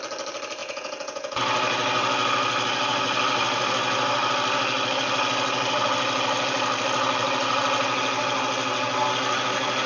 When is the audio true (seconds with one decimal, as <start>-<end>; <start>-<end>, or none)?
0.0-0.6; 1.4-9.9